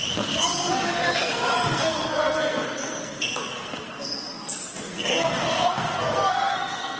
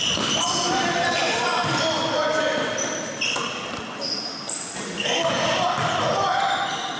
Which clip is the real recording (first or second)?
second